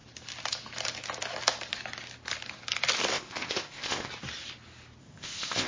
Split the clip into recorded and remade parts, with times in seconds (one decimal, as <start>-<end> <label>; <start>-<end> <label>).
0.0-3.1 recorded; 3.1-4.1 remade; 4.1-5.0 recorded; 5.0-5.7 remade